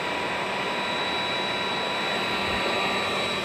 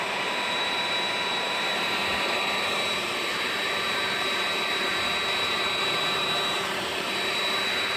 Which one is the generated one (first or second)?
second